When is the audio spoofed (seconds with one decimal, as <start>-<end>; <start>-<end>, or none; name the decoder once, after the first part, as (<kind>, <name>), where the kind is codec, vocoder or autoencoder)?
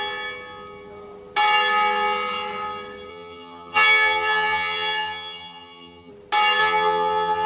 3.1-6.1 (vocoder, HiFi-GAN); 6.6-7.5